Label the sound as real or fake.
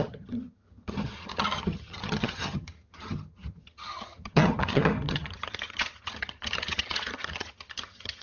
fake